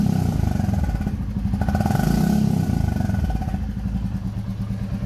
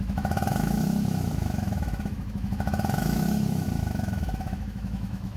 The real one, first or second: first